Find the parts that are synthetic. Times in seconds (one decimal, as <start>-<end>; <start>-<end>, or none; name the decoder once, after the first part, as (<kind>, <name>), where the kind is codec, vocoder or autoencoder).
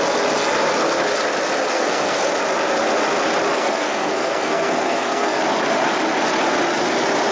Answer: 1.7-2.3 (codec, SNAC); 3.5-5.4